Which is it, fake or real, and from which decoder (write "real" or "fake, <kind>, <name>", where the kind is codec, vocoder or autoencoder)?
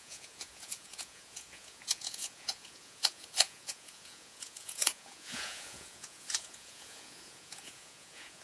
fake, vocoder, Vocos